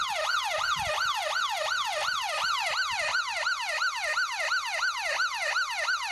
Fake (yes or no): no